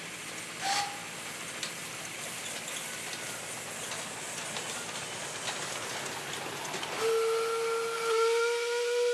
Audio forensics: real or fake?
real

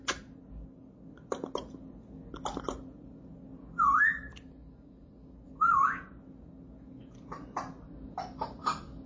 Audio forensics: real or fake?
real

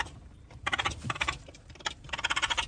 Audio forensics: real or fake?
fake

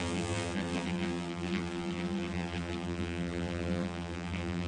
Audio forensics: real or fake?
fake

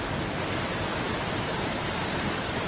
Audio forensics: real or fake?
fake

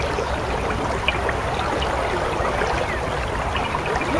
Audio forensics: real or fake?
real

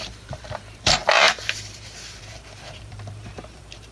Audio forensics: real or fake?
fake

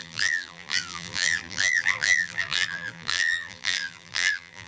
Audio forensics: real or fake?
fake